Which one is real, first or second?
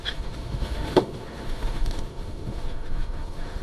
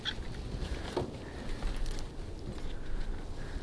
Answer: second